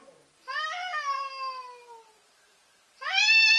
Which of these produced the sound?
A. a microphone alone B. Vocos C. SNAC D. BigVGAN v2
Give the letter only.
A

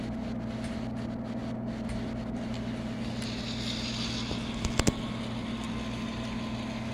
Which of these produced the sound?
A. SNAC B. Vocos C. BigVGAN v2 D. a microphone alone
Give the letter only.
D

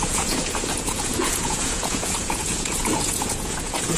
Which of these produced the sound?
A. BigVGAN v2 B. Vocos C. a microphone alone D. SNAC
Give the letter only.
B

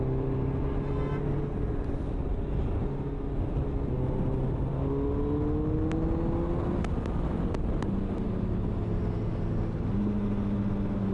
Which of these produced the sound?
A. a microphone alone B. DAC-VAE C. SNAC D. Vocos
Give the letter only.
A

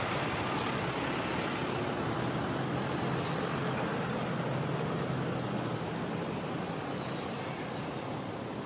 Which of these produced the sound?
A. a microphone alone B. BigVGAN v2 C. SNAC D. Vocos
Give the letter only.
A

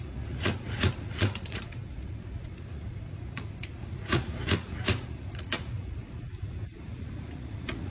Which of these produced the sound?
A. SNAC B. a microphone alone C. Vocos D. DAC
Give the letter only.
C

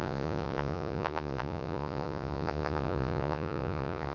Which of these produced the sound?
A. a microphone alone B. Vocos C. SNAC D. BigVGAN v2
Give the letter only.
B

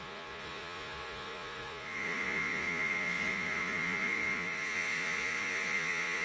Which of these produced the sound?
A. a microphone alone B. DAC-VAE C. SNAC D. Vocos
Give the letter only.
D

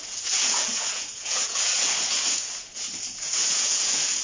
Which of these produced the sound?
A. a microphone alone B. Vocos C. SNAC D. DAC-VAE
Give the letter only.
B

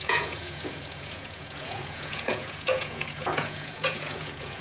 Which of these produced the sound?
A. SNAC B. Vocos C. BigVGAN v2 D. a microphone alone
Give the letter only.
B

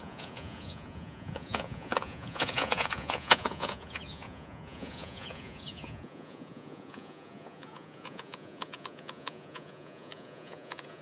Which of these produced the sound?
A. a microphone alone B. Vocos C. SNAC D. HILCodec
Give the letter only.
B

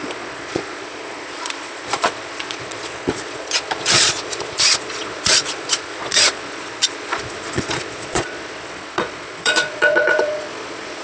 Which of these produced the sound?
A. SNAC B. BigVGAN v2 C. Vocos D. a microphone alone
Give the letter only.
C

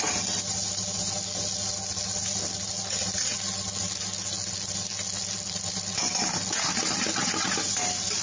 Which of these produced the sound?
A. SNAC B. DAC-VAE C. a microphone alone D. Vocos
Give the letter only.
C